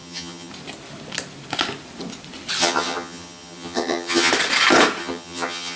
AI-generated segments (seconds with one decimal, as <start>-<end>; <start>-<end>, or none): 0.0-0.5; 2.6-4.3; 5.0-5.8